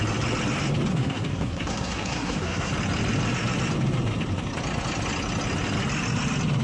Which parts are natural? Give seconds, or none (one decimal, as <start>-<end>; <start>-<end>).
0.0-0.9; 2.7-6.6